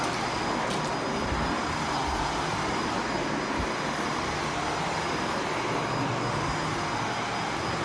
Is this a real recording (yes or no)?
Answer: yes